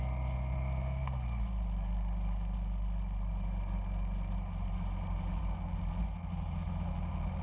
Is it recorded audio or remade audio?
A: recorded